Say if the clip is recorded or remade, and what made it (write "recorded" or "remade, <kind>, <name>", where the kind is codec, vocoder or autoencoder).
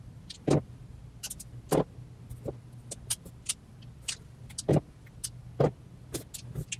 recorded